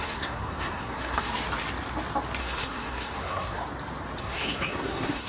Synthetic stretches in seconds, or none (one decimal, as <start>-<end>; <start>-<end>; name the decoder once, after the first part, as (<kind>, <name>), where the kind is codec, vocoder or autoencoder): 0.0-1.3 (codec, SNAC); 2.4-3.6; 4.2-5.3